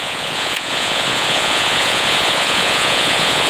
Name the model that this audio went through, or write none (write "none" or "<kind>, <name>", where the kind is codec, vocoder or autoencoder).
vocoder, Vocos